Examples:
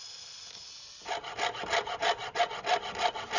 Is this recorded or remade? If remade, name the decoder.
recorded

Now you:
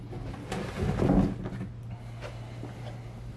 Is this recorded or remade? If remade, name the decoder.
recorded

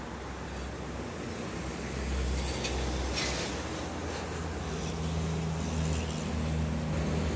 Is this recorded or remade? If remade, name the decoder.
recorded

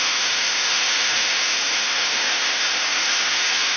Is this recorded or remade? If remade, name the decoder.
remade, autoencoder, DAC-VAE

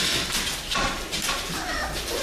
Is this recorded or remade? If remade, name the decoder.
recorded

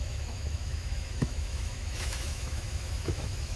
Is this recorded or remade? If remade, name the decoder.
remade, autoencoder, DAC-VAE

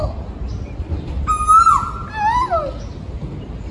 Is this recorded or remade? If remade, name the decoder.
recorded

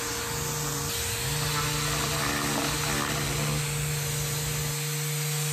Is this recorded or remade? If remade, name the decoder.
recorded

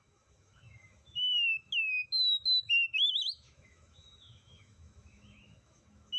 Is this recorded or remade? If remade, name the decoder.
remade, autoencoder, DAC-VAE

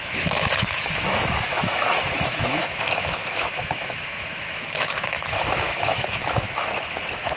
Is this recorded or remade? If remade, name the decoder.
remade, autoencoder, DAC-VAE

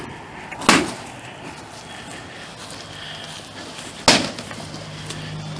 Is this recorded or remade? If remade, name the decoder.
recorded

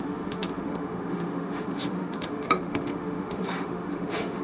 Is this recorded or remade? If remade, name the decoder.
remade, autoencoder, DAC-VAE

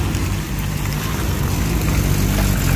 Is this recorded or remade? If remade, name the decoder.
recorded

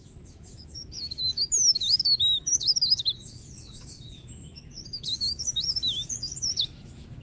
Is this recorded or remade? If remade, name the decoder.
remade, autoencoder, DAC-VAE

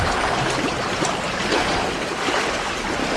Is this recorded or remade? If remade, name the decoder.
recorded